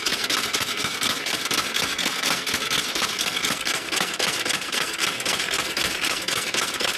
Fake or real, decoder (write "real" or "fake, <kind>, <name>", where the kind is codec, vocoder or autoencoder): fake, codec, SNAC